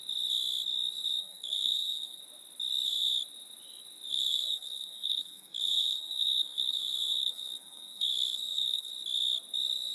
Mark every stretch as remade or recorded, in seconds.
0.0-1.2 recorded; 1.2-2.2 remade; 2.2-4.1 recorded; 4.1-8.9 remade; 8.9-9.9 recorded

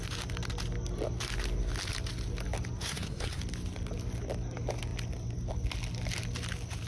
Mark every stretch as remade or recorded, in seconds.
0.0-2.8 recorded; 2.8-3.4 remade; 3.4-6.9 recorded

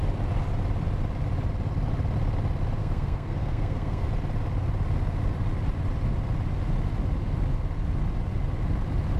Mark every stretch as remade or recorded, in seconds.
0.0-2.8 recorded; 2.8-4.1 remade; 4.1-9.2 recorded

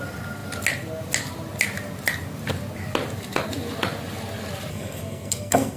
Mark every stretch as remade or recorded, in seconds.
0.0-4.7 recorded; 4.7-5.8 remade